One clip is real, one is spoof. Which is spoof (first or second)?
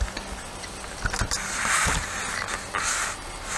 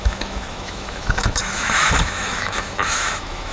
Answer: second